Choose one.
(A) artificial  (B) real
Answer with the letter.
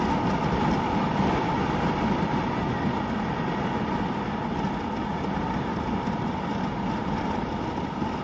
B